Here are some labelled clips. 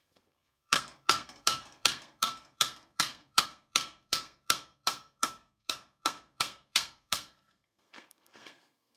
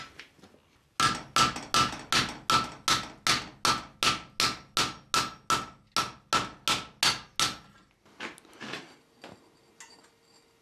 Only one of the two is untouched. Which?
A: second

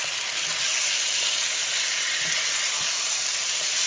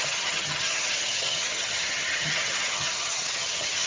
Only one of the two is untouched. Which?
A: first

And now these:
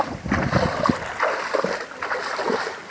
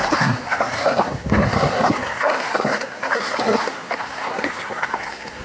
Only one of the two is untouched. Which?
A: first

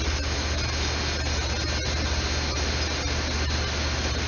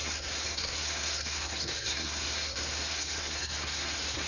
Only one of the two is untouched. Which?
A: first